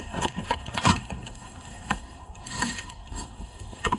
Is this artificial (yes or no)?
yes